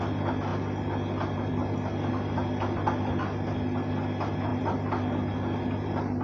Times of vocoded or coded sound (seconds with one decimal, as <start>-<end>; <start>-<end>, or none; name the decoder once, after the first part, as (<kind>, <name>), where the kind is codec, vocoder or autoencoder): 4.5-5.6 (vocoder, BigVGAN v2)

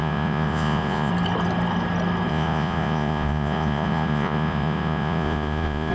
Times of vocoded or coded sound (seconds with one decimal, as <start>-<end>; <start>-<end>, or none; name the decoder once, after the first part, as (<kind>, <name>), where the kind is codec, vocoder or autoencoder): 0.0-1.1 (vocoder, Vocos); 2.3-5.9